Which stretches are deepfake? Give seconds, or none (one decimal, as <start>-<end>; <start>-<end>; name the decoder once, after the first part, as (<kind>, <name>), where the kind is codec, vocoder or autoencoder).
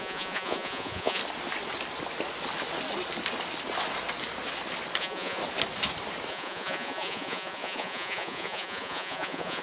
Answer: 0.0-1.2 (vocoder, Vocos); 5.0-5.4; 6.3-9.6